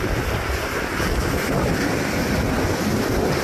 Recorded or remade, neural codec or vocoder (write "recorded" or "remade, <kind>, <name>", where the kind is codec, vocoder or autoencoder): recorded